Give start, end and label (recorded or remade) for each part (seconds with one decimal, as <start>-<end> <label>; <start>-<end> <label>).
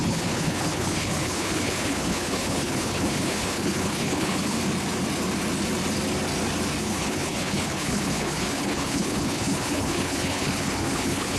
0.0-4.6 remade; 4.6-6.8 recorded; 6.8-11.4 remade